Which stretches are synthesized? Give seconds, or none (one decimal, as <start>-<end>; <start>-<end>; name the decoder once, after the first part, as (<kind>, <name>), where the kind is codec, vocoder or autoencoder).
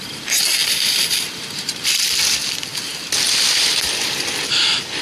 0.6-2.1 (vocoder, BigVGAN v2)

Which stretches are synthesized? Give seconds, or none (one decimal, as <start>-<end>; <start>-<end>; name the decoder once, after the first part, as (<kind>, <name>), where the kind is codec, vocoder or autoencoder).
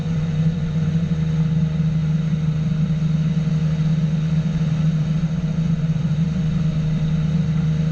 0.0-1.1 (vocoder, Vocos); 5.5-6.2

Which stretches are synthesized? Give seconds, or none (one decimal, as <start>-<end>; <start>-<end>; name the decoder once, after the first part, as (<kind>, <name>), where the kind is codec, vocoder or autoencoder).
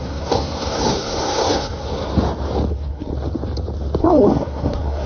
0.0-2.1 (codec, SNAC); 2.7-3.1; 4.0-5.1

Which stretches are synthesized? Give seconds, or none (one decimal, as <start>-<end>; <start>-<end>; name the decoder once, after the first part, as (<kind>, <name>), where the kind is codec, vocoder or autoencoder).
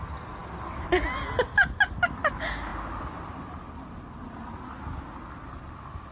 none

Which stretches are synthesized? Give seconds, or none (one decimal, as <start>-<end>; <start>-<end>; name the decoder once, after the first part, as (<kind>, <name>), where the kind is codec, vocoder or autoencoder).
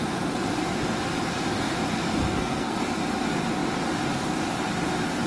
2.2-2.8 (codec, SNAC)